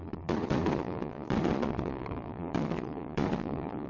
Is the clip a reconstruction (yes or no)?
yes